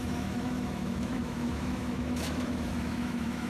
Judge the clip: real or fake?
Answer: fake